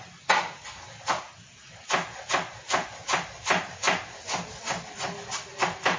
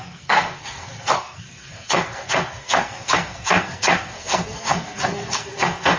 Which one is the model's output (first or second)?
second